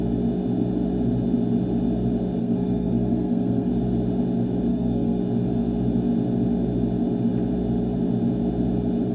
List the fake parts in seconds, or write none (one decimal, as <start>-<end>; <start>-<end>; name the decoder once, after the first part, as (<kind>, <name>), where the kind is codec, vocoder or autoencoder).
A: 2.4-3.7 (codec, SNAC); 4.7-5.2